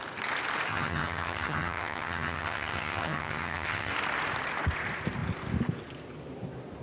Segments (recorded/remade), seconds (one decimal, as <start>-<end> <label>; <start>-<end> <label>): 0.0-0.7 recorded; 0.7-3.9 remade; 3.9-6.8 recorded